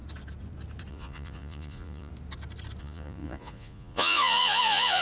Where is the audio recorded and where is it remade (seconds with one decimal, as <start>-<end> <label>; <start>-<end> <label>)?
0.0-0.9 recorded; 0.9-2.1 remade; 2.1-2.8 recorded; 2.8-5.0 remade